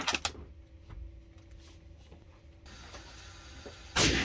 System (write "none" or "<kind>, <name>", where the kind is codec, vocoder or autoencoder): none